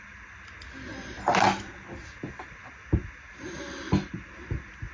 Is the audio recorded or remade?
recorded